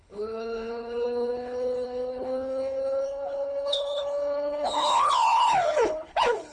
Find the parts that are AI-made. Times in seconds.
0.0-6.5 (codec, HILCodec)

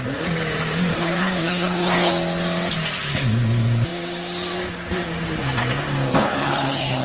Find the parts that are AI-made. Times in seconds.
0.9-2.1 (codec, HILCodec); 6.1-7.0

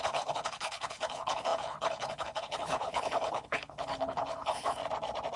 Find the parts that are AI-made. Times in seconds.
0.0-4.8 (codec, HILCodec)

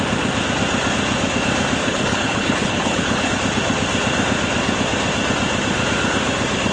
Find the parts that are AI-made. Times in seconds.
1.8-3.3 (codec, HILCodec)